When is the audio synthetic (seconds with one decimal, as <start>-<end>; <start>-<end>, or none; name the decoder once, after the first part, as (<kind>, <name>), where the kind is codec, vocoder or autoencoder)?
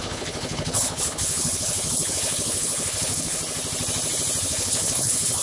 0.0-3.4 (codec, HILCodec); 4.4-5.4